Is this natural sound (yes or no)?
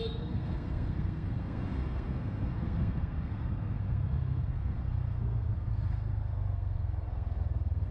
no